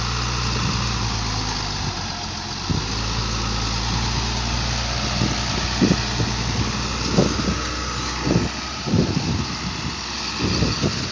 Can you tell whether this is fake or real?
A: real